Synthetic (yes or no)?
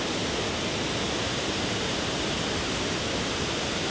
no